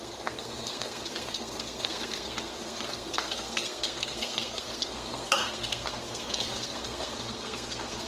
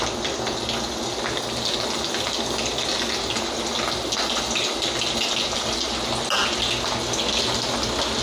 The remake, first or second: first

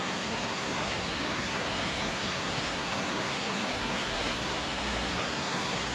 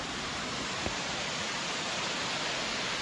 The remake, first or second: first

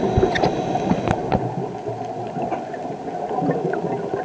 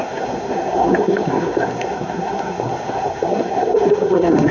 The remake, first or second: second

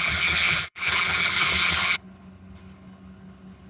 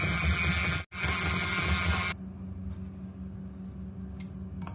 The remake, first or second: first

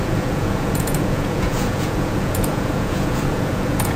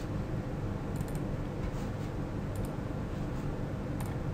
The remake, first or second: first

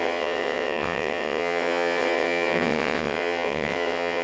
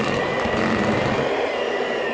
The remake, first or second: first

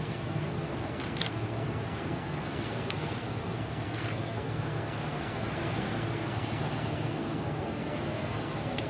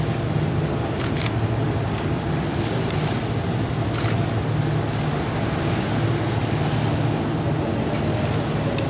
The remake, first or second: first